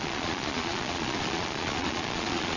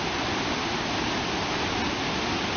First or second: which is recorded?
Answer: second